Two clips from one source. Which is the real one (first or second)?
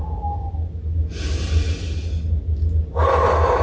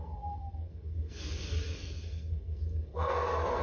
first